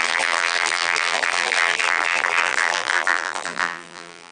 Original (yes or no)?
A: no